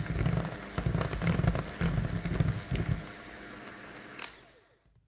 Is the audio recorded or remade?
recorded